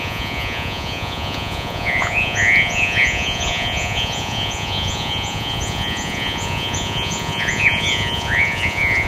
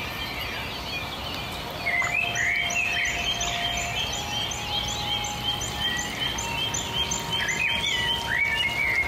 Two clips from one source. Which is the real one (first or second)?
second